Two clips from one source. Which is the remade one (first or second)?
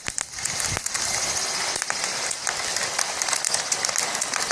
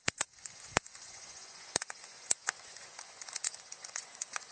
second